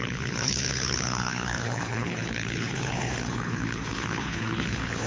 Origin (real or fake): fake